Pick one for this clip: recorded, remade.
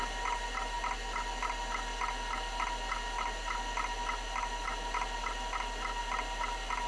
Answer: recorded